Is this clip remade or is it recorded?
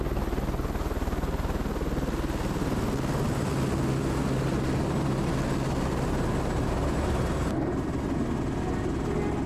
recorded